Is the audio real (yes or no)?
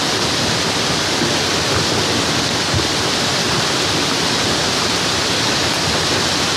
yes